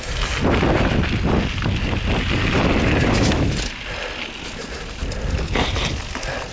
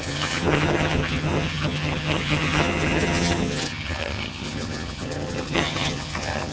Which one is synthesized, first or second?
second